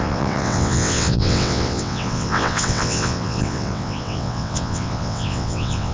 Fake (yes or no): yes